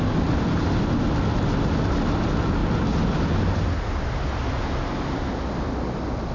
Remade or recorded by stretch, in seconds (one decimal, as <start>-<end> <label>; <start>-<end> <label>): 0.0-6.3 recorded